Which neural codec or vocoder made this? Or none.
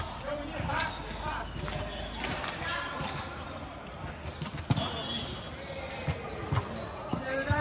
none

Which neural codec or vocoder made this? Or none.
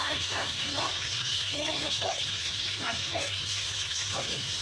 codec, SNAC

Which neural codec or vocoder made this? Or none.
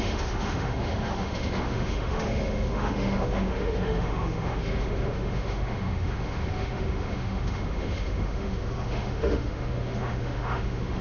autoencoder, DAC-VAE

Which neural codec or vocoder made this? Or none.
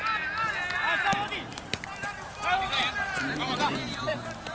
none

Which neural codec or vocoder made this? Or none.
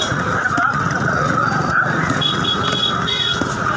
vocoder, Vocos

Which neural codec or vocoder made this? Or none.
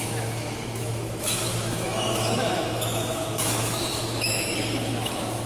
autoencoder, DAC-VAE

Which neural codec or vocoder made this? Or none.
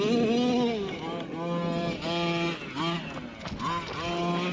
none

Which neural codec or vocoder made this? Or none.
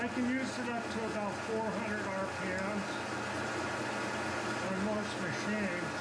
none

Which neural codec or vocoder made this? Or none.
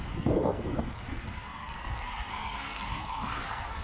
codec, SNAC